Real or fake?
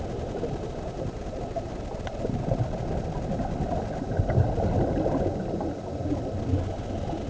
real